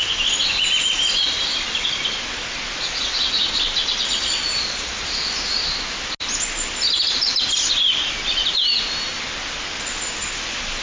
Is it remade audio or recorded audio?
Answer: recorded